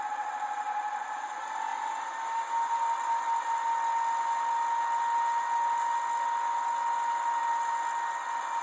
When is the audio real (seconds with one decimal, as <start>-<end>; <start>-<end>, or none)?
0.0-8.6